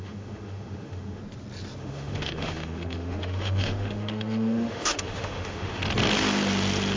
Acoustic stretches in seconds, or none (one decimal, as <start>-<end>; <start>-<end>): 1.2-1.8; 5.8-7.0